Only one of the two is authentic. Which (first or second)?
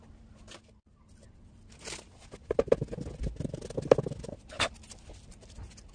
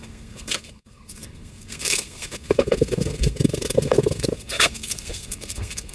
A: first